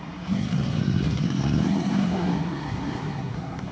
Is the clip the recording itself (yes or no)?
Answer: no